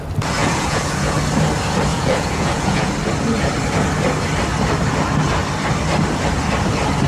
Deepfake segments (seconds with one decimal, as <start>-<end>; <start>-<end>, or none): 0.4-1.2; 1.9-2.9